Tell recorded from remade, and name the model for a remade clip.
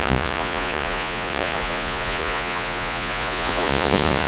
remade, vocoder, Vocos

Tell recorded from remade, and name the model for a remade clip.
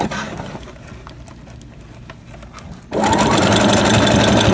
recorded